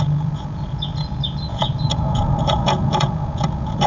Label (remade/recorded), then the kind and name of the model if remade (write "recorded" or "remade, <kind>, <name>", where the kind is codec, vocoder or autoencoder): remade, vocoder, Vocos